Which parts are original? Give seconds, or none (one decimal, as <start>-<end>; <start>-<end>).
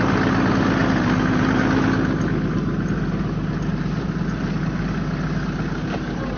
0.0-0.8; 1.6-3.7; 4.8-6.4